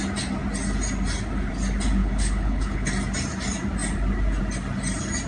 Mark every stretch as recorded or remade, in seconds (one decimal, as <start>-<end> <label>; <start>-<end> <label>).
0.0-2.0 recorded; 2.0-2.9 remade; 2.9-5.3 recorded